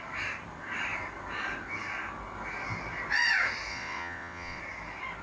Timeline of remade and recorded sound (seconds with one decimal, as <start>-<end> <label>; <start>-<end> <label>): 0.0-3.7 recorded; 3.7-4.6 remade; 4.6-5.2 recorded